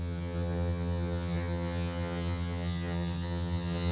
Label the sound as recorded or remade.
remade